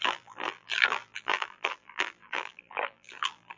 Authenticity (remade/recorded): remade